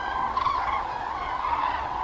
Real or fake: fake